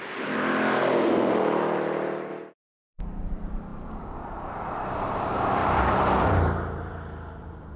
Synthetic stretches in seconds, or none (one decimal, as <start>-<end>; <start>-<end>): 0.0-2.3; 3.0-3.7; 4.7-5.6; 6.3-7.8